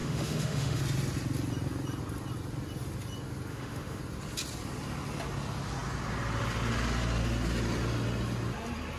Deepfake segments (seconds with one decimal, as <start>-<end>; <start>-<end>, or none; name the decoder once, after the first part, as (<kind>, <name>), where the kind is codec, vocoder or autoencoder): 0.0-0.8 (autoencoder, DAC-VAE); 3.5-4.0

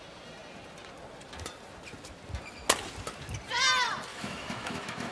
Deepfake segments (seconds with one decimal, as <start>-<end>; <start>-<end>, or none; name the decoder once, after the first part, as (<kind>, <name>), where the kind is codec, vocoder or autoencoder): 4.1-5.1 (autoencoder, DAC-VAE)

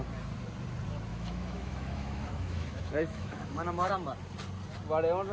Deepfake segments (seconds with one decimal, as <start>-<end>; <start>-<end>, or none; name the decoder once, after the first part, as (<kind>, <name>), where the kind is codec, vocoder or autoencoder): 1.1-3.9 (autoencoder, DAC-VAE)

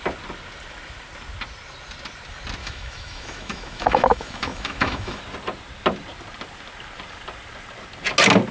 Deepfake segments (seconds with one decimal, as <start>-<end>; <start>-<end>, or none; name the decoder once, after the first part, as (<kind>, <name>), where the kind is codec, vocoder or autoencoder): 2.6-5.2 (autoencoder, DAC-VAE)

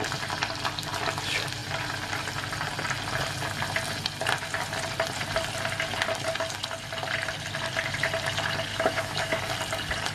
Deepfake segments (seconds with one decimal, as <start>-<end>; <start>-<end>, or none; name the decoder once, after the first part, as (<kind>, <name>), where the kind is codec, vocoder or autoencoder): 8.7-9.4 (autoencoder, DAC-VAE)

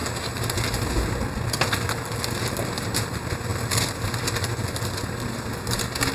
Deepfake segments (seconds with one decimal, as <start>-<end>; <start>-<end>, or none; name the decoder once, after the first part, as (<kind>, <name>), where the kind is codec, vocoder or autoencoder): none